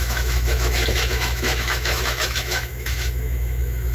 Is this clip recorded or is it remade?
remade